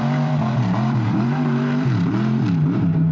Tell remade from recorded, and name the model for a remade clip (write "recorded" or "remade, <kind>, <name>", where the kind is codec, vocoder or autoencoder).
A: remade, vocoder, BigVGAN v2